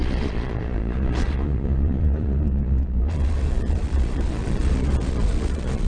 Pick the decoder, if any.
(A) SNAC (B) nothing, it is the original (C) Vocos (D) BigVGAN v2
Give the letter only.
C